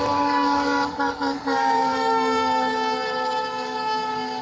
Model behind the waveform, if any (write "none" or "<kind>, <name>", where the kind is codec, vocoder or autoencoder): codec, DAC